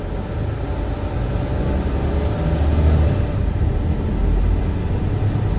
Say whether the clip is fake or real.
real